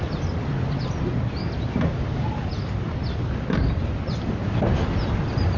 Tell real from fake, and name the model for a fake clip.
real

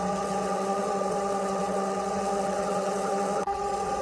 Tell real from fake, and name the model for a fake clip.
fake, vocoder, WaveNeXt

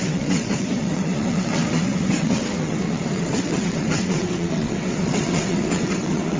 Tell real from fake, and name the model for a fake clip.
fake, vocoder, WaveNeXt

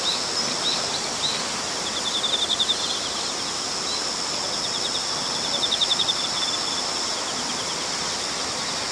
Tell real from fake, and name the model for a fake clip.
real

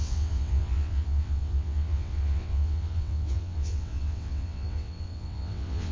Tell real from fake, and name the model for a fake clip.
fake, vocoder, WaveNeXt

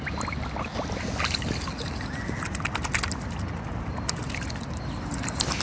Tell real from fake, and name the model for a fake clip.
real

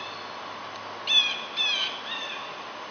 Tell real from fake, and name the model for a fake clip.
real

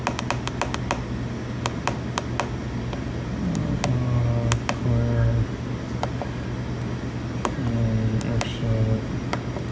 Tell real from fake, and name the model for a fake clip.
real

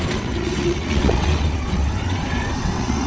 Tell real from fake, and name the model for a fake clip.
fake, vocoder, WaveNeXt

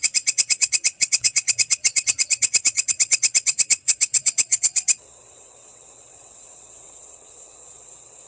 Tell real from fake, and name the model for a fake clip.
fake, vocoder, WaveNeXt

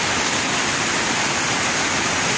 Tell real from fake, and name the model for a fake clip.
real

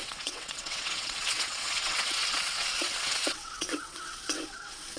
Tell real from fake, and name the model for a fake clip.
fake, vocoder, WaveNeXt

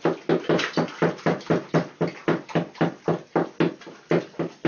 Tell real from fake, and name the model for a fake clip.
real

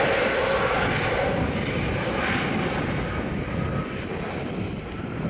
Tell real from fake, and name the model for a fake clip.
real